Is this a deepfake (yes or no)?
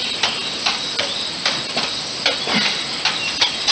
no